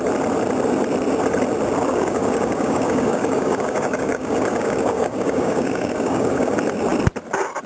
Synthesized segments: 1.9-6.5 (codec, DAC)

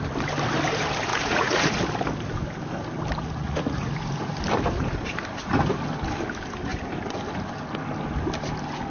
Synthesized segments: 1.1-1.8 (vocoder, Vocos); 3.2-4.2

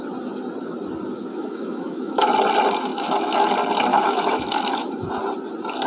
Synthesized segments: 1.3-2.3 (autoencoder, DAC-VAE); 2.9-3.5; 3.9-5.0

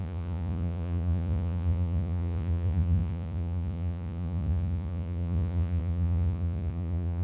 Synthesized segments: 0.0-7.2 (vocoder, Vocos)

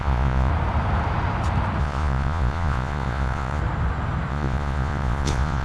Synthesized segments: 0.0-0.5 (vocoder, Vocos); 1.8-3.6; 4.3-5.6

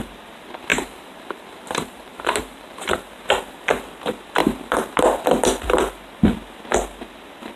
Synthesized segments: 0.7-2.9 (vocoder, BigVGAN v2)

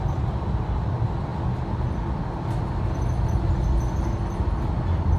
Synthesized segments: none